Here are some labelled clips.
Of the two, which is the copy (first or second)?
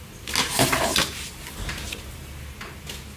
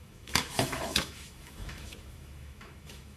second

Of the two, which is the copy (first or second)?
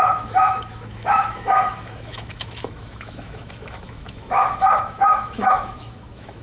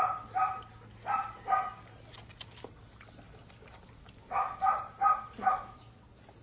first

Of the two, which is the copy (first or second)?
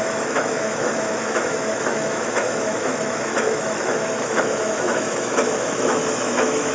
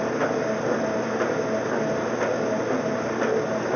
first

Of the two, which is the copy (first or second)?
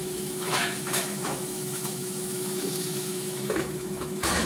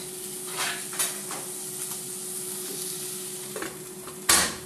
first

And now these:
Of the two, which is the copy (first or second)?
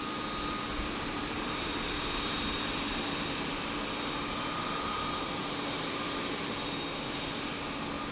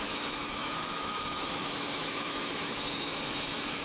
second